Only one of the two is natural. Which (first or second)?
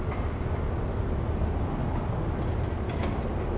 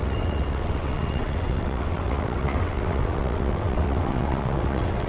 first